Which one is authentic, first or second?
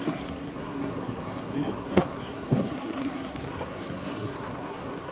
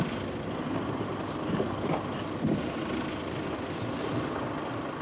second